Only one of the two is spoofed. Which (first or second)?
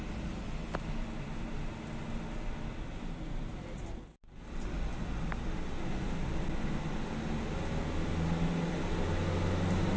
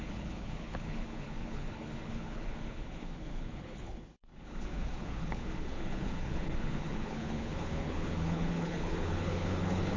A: second